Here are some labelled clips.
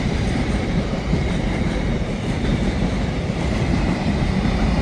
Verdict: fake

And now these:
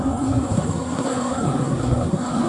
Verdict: fake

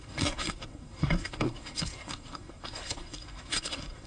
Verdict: fake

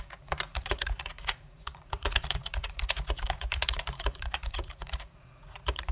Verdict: fake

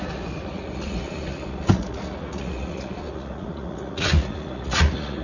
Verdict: fake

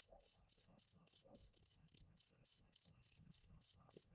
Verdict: fake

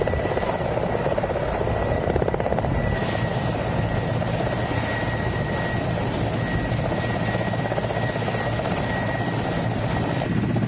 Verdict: real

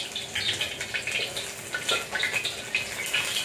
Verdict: real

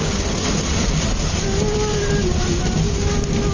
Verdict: real